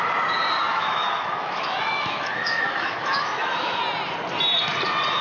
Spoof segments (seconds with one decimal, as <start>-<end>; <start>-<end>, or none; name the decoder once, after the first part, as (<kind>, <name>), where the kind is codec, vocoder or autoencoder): 0.7-3.8 (autoencoder, DAC-VAE)